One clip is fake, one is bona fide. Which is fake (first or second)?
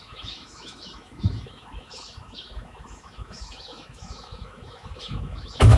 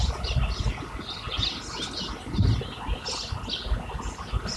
first